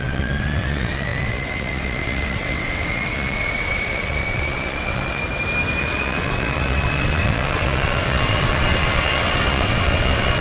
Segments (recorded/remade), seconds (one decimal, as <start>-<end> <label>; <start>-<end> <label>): 0.0-5.2 remade; 5.2-5.8 recorded; 5.8-10.4 remade